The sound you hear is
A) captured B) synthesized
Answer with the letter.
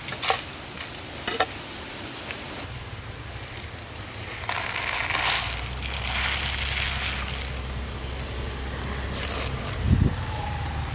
A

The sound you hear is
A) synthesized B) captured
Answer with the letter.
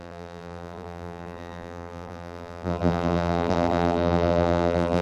A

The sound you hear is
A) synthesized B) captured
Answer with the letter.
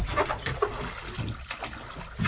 B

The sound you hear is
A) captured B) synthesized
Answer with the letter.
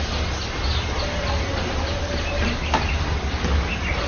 A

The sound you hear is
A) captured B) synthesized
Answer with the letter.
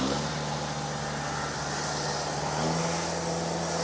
A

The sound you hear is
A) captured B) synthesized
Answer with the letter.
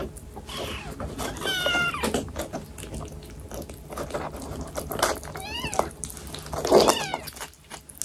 A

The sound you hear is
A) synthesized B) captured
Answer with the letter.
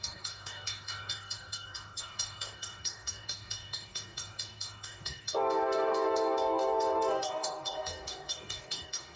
A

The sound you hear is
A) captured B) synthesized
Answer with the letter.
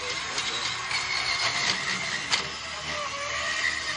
A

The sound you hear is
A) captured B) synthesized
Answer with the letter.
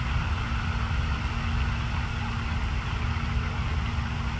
A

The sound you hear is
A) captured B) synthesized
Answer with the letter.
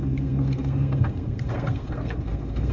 B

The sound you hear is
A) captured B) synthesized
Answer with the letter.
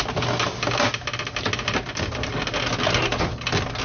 A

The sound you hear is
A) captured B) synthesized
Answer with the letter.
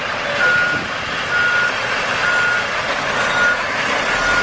A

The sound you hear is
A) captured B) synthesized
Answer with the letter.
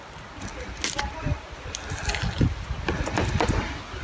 A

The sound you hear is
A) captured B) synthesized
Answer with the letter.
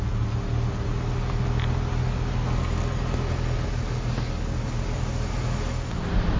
A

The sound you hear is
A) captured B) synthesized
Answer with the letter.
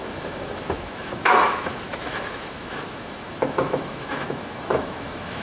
B